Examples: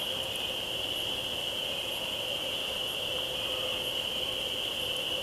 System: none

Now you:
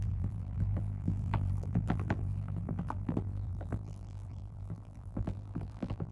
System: vocoder, BigVGAN v2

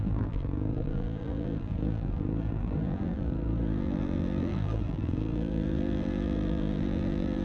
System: vocoder, BigVGAN v2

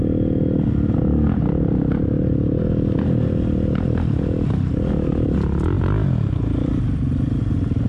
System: none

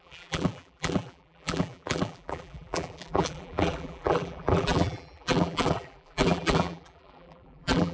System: vocoder, BigVGAN v2